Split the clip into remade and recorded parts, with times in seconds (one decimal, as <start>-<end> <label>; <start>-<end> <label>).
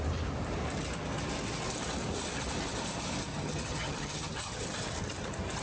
0.0-3.3 recorded; 3.3-4.7 remade; 4.7-5.6 recorded